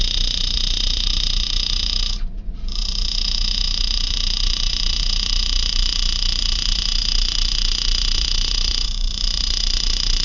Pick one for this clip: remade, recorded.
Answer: remade